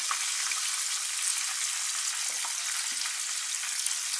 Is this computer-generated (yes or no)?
no